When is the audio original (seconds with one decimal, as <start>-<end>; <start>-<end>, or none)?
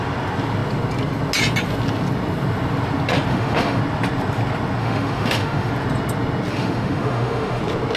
0.0-3.3; 3.8-4.8; 5.7-6.5; 7.6-8.0